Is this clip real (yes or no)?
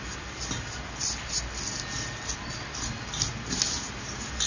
yes